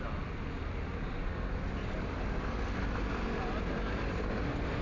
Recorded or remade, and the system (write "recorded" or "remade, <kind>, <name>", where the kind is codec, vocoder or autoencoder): recorded